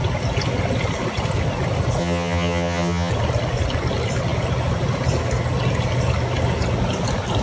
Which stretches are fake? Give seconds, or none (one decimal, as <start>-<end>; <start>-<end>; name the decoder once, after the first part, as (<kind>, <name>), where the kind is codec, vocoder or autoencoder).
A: 2.0-3.1 (vocoder, HiFi-GAN)